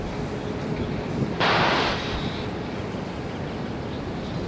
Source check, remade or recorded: recorded